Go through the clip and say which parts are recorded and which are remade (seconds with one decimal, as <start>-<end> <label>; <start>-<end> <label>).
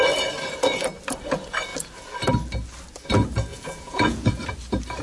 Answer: 0.0-3.5 recorded; 3.5-4.3 remade; 4.3-5.0 recorded